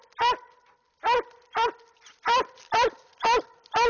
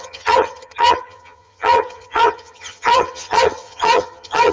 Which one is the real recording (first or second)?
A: first